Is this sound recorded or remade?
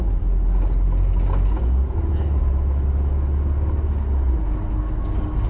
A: recorded